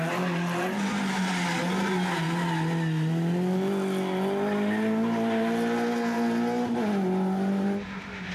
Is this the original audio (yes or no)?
yes